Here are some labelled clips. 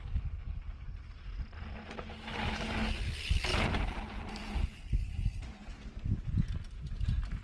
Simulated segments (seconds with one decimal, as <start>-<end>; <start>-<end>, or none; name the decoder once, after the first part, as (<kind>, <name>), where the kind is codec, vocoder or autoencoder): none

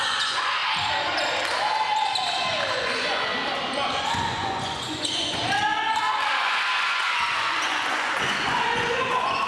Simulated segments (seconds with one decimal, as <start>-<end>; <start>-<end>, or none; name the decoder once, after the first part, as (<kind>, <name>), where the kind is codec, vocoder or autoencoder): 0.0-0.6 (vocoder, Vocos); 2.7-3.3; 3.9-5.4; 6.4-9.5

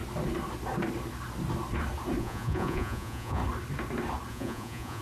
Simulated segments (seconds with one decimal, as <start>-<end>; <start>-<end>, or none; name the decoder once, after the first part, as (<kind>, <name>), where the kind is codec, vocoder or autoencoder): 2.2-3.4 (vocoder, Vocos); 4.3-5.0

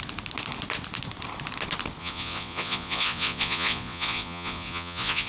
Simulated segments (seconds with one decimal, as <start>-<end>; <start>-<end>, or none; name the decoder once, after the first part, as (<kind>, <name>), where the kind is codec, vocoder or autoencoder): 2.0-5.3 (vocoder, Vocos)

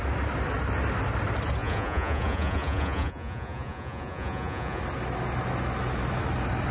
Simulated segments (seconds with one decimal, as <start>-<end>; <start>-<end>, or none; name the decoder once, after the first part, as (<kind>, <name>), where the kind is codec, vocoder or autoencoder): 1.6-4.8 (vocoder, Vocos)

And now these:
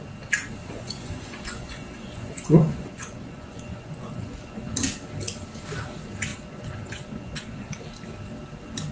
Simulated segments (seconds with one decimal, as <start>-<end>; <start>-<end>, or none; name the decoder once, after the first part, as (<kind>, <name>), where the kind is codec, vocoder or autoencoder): 0.6-4.7 (vocoder, Vocos); 6.3-7.7

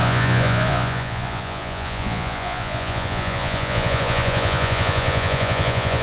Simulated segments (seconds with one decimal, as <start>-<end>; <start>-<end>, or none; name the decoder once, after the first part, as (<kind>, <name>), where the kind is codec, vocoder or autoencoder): 0.0-6.0 (vocoder, Vocos)

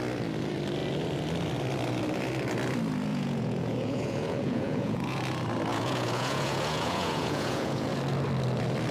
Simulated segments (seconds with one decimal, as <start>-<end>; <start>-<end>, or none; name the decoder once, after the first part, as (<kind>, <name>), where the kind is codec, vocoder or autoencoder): 3.1-5.2 (vocoder, Vocos); 5.7-8.0